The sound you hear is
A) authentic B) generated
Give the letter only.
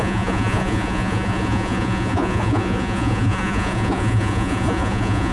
B